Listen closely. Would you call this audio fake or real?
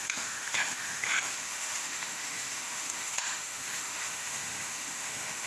fake